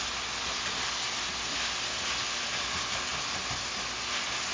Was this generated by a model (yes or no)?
no